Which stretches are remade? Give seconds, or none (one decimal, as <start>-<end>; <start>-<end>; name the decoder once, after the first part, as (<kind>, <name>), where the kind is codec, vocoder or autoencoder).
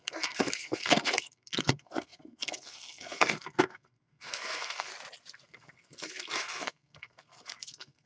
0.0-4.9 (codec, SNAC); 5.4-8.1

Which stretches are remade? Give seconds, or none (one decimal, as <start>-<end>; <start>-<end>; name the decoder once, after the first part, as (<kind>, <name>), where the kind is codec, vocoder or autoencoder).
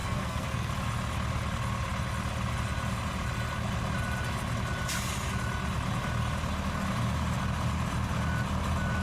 0.0-0.7 (codec, SNAC)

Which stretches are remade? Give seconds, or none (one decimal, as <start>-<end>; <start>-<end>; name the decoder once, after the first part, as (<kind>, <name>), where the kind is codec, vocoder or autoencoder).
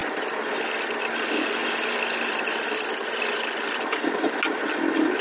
none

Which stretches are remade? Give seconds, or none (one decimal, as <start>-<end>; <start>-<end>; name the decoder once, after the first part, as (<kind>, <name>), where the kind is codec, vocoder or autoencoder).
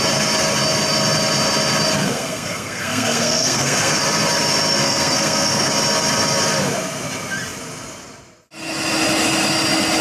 2.0-4.0 (codec, SNAC); 4.8-5.7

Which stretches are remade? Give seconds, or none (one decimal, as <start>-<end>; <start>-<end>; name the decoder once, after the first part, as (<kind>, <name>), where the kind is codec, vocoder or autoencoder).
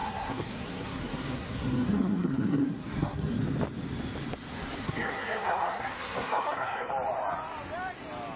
0.0-3.4 (codec, SNAC); 4.8-6.9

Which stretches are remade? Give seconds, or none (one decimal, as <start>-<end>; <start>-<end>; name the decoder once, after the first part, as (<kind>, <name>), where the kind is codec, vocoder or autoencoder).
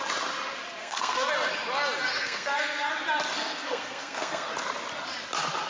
0.8-1.3 (codec, SNAC); 2.1-2.9; 3.4-4.5